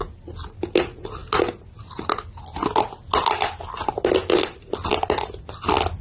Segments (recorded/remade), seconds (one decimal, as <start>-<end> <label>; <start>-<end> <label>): 0.0-6.0 recorded